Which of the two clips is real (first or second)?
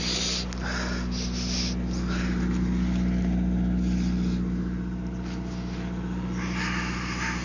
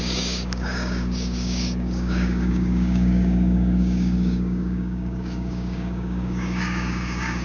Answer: first